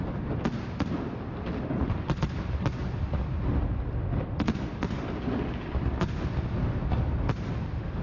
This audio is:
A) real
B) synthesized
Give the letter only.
A